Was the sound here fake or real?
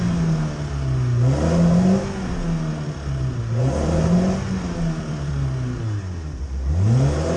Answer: real